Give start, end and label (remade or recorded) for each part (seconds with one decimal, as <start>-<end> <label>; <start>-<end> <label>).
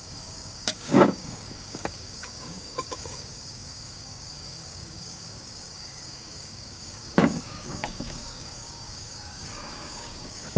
0.0-10.6 remade